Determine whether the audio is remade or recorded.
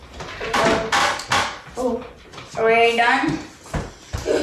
recorded